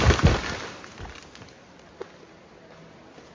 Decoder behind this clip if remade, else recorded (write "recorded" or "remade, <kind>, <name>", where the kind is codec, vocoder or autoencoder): recorded